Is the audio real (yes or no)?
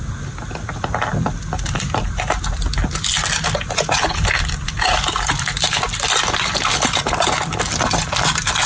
yes